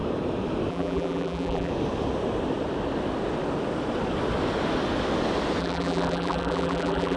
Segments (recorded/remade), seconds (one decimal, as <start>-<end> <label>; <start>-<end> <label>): 0.0-0.7 recorded; 0.7-1.7 remade; 1.7-5.6 recorded; 5.6-7.2 remade